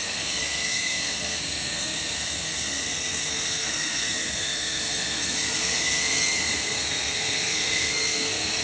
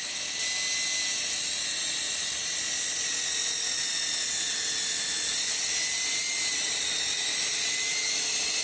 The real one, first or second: second